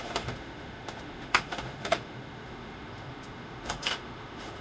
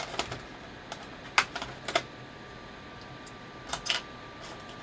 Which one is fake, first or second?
first